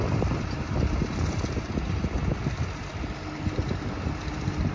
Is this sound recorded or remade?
recorded